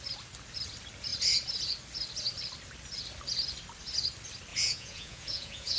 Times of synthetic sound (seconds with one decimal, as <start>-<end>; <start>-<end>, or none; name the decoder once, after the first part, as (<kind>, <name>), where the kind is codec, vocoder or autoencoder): 4.5-5.8 (vocoder, Vocos)